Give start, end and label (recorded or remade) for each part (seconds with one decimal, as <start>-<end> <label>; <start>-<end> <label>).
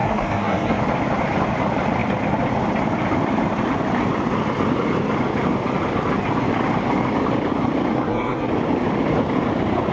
0.0-0.8 remade; 0.8-7.9 recorded; 7.9-8.5 remade; 8.5-9.9 recorded